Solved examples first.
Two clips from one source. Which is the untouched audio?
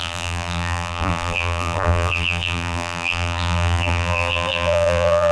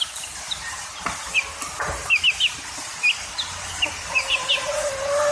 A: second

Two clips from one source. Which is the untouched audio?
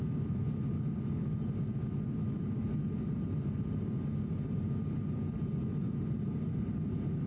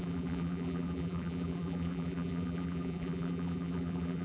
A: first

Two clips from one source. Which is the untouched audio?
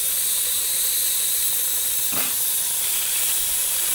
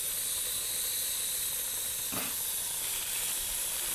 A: second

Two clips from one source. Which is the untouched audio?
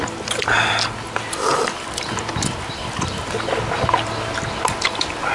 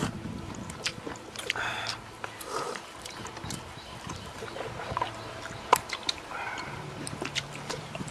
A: first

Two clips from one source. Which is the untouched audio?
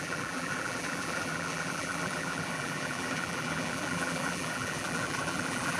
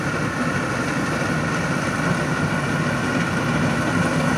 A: second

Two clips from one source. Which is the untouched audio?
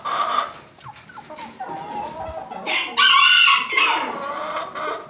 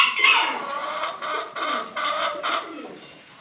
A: first